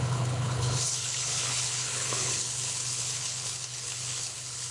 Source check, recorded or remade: remade